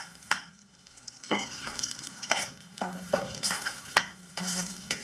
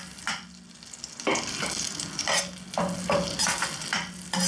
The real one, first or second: second